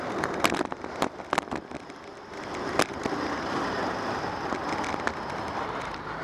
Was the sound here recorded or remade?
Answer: remade